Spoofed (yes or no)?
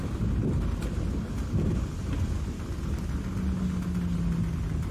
no